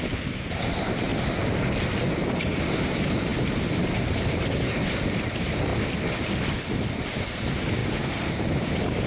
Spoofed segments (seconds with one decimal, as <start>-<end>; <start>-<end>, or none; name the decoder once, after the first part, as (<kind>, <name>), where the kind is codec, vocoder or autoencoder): 0.0-1.1 (vocoder, BigVGAN v2); 2.1-5.7; 7.2-7.8